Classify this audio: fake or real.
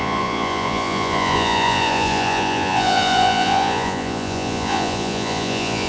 fake